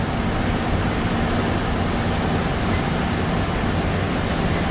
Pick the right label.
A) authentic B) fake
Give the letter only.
A